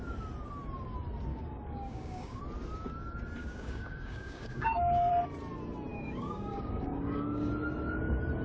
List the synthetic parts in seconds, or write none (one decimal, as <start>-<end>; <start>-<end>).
1.3-2.4; 3.4-5.1; 5.9-7.5